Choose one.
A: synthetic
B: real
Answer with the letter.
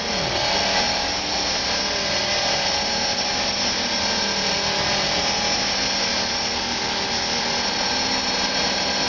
B